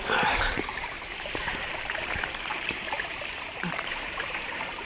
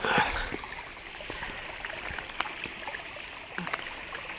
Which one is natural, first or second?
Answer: second